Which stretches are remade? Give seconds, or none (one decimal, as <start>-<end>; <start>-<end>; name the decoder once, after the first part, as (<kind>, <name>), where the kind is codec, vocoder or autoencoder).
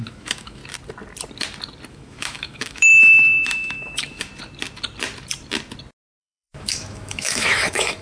0.0-0.6 (autoencoder, DAC-VAE); 1.9-4.3; 6.2-8.0